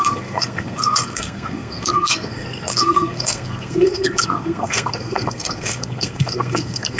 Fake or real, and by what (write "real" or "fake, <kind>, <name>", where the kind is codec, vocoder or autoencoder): fake, codec, SNAC